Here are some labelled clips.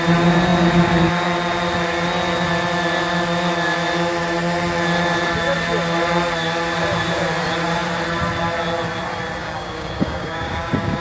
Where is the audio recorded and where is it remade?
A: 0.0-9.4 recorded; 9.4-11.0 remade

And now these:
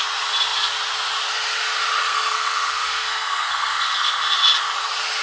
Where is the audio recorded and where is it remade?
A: 0.0-2.1 recorded; 2.1-4.2 remade; 4.2-5.2 recorded